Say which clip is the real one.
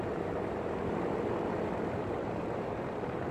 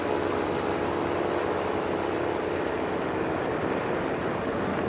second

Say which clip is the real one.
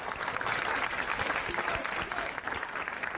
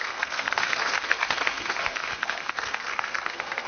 first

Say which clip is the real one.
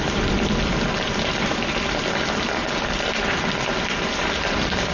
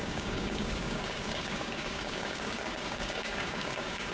first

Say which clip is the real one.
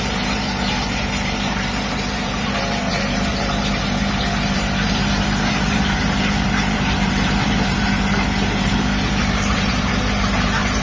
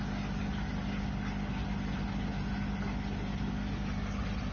second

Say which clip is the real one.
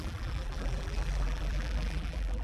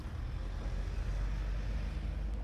second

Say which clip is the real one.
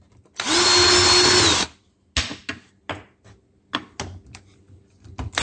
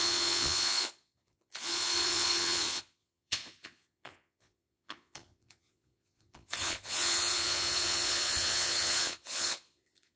first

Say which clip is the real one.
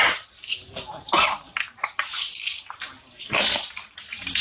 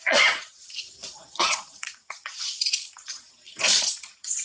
first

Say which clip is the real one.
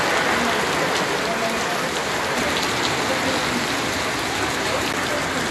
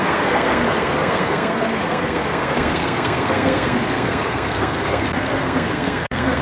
first